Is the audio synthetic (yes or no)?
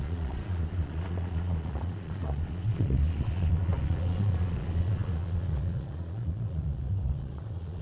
yes